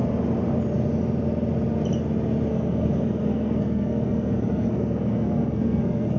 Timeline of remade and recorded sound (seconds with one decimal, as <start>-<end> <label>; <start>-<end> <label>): 0.0-2.5 recorded; 2.5-6.2 remade